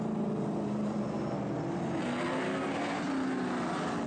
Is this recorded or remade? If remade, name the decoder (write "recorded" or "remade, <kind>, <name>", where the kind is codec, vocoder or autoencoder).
recorded